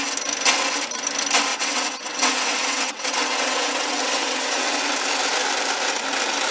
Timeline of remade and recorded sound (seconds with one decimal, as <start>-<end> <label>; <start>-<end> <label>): 0.0-1.5 recorded; 1.5-4.8 remade; 4.8-6.5 recorded